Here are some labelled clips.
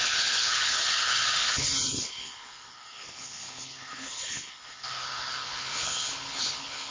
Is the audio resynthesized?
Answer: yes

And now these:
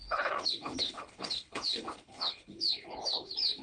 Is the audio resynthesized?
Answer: yes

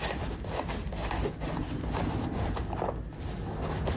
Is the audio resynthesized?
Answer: no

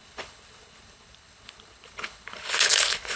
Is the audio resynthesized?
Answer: yes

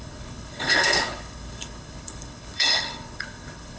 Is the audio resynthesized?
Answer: yes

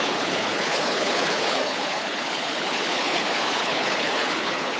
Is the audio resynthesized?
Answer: yes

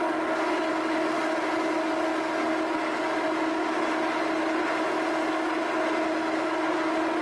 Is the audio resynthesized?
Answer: no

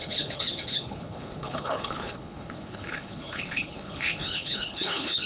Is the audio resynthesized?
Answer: yes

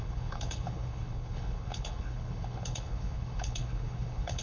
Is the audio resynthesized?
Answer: yes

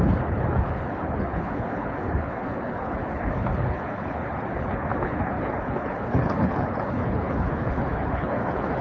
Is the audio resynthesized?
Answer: yes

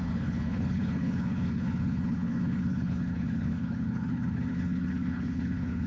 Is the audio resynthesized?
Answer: yes